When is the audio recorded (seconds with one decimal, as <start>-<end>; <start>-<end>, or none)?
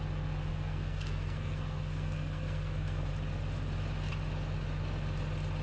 0.0-0.5; 3.1-5.6